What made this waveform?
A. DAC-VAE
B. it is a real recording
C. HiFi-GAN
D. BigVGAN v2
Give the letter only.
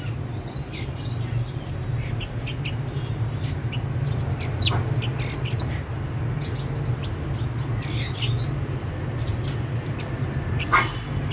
B